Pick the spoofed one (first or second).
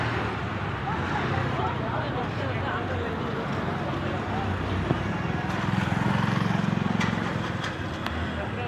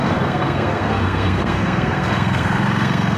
second